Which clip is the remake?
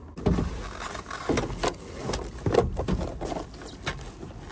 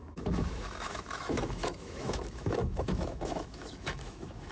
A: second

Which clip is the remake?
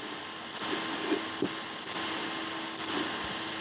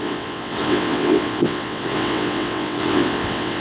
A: second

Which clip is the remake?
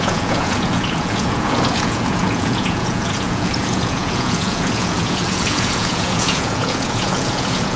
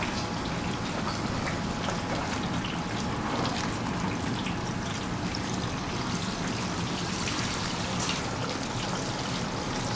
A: first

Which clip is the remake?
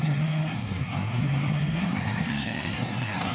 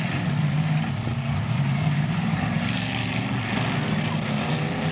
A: first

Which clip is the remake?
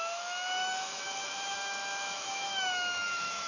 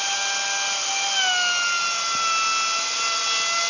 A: first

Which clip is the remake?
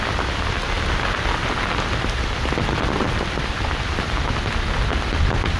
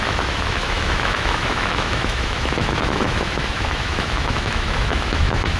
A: second